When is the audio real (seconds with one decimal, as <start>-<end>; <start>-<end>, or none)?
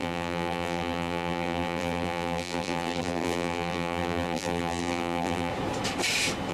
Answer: 5.5-6.5